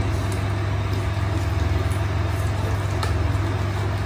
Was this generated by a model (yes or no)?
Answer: no